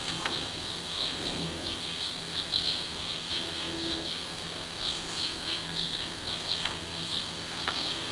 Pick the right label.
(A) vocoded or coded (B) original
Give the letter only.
A